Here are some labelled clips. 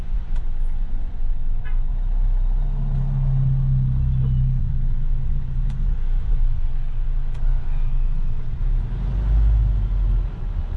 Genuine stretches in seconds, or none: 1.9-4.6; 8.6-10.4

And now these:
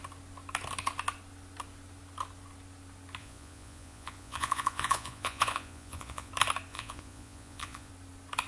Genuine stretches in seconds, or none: 0.0-3.2; 6.3-6.7; 7.9-8.5